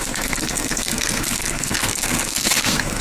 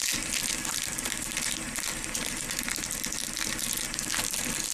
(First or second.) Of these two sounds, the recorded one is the second